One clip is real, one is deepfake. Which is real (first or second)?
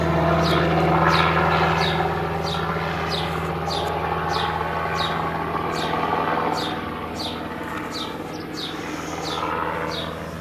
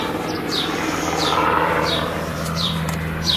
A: first